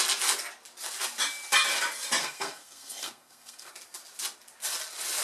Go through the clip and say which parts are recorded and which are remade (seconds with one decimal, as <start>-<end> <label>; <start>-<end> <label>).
0.0-2.2 recorded; 2.2-3.7 remade; 3.7-5.2 recorded